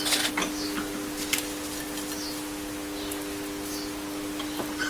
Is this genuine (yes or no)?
yes